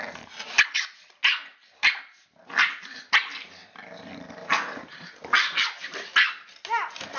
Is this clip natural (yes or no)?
yes